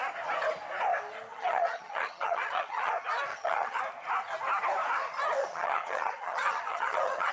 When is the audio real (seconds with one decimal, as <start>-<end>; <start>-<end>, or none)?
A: 0.0-1.3; 2.9-3.3; 3.8-5.4